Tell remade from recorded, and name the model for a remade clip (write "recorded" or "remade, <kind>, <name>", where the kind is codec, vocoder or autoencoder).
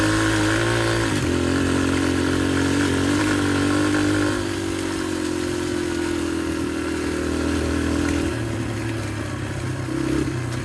recorded